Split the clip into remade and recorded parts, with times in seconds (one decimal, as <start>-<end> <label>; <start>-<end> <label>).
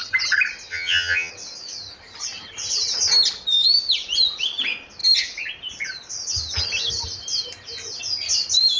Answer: 0.0-0.7 recorded; 0.7-1.3 remade; 1.3-8.8 recorded